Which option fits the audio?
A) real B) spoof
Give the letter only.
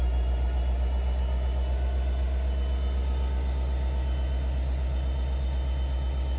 A